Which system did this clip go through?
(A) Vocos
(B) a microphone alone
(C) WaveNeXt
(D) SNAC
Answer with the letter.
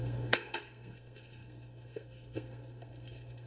D